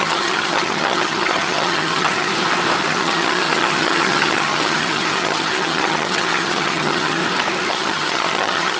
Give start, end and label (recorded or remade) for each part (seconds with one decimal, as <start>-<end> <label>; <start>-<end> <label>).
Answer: 0.0-2.3 remade; 2.3-2.8 recorded; 2.8-7.2 remade; 7.2-7.7 recorded; 7.7-8.8 remade

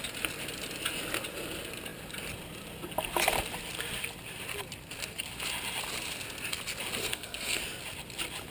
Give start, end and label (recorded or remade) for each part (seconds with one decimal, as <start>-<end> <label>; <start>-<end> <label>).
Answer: 0.0-7.0 recorded; 7.0-7.6 remade; 7.6-8.5 recorded

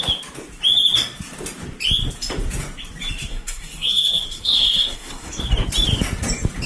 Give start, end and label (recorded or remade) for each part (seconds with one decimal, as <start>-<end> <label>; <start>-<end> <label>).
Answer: 0.0-3.3 recorded; 3.3-5.4 remade; 5.4-6.7 recorded

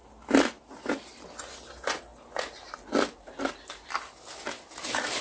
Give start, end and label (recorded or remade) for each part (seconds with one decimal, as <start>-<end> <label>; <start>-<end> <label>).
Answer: 0.0-5.2 recorded

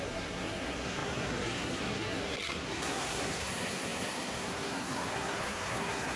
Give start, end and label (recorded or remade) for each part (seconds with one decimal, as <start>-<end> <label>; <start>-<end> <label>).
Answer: 0.0-6.2 remade

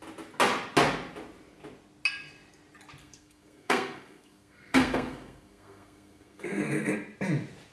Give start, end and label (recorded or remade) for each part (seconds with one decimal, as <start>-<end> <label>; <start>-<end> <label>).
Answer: 0.0-3.0 recorded; 3.0-6.9 remade; 6.9-7.7 recorded

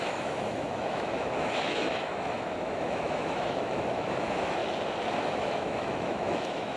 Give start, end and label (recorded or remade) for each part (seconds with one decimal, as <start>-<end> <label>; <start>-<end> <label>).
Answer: 0.0-4.6 remade; 4.6-5.2 recorded; 5.2-6.8 remade